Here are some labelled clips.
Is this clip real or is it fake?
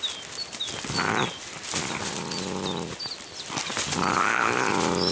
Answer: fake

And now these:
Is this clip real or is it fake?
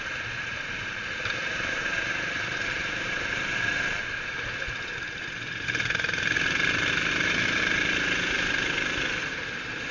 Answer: fake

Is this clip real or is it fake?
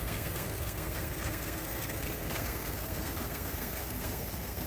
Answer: fake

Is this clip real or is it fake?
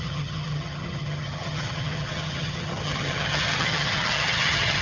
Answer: fake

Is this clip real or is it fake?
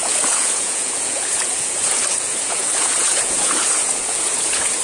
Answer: fake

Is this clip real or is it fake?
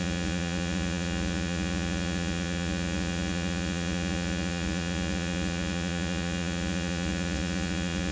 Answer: fake